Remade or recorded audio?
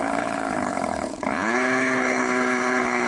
remade